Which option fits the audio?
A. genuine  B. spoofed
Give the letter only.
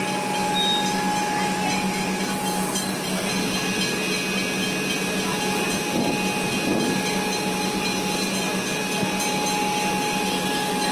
A